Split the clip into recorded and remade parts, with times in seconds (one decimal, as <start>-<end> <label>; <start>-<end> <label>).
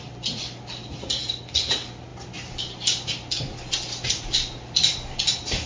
0.0-5.7 recorded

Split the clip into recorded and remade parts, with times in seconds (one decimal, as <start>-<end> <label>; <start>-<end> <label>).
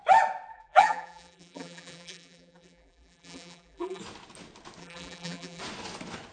0.0-0.5 recorded; 0.5-4.0 remade; 4.0-4.8 recorded; 4.8-5.6 remade; 5.6-6.3 recorded